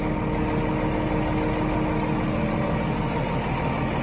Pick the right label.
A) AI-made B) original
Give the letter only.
B